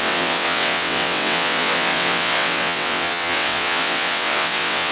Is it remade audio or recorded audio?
remade